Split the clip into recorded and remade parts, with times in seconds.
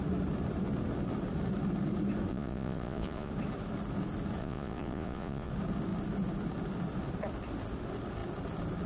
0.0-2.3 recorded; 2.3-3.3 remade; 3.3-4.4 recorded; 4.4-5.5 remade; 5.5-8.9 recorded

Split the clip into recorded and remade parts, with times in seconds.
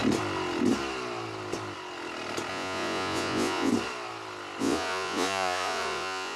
0.0-2.5 recorded; 2.5-3.7 remade; 3.7-4.6 recorded; 4.6-6.4 remade